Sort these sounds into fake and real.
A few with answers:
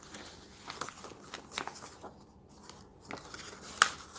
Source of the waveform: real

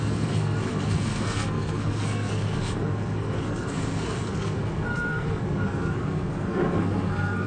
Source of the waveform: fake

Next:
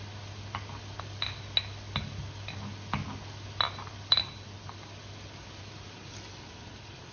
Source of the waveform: real